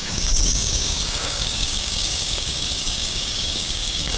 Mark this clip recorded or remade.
remade